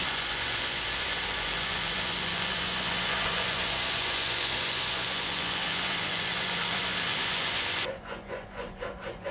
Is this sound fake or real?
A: fake